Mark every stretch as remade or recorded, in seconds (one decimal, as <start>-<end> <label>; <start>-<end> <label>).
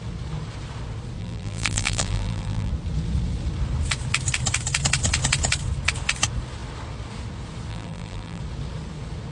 0.0-1.2 recorded; 1.2-2.7 remade; 2.7-7.7 recorded; 7.7-8.4 remade; 8.4-9.3 recorded